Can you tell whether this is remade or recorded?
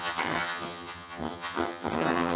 remade